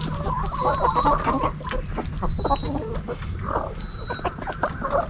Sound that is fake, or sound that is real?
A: real